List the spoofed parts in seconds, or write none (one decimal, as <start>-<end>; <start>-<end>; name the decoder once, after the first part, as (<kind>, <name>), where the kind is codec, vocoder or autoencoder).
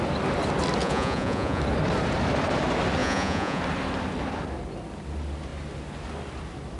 0.8-1.6 (vocoder, Vocos); 3.0-3.6